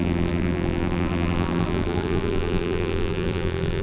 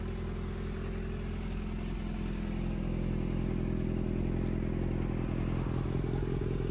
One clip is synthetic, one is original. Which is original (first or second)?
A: second